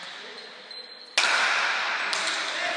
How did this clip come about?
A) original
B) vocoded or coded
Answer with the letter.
A